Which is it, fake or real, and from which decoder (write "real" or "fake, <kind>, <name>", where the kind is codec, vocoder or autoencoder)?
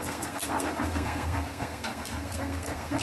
fake, codec, SNAC